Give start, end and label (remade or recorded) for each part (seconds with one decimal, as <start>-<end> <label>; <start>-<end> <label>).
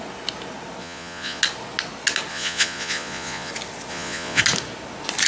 0.0-0.8 recorded; 0.8-1.4 remade; 1.4-2.3 recorded; 2.3-3.5 remade; 3.5-3.9 recorded; 3.9-4.4 remade; 4.4-5.3 recorded